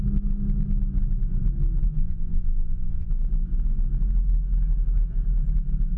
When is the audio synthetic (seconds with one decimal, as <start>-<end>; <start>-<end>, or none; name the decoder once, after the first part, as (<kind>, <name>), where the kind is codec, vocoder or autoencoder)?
2.0-3.1 (vocoder, Vocos)